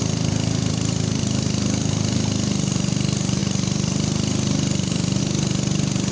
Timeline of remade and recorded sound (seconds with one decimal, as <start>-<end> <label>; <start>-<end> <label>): 0.0-6.1 remade